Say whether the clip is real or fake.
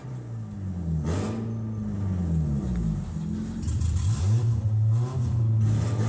real